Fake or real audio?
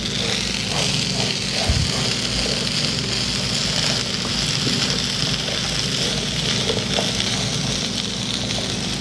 real